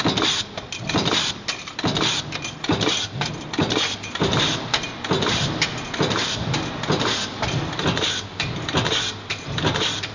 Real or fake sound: real